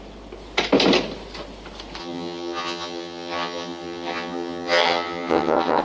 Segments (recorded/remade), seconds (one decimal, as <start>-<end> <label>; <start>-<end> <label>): 0.0-2.0 recorded; 2.0-5.8 remade